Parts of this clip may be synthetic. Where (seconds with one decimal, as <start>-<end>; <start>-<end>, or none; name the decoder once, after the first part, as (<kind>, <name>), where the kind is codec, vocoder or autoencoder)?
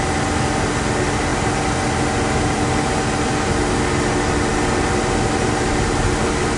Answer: none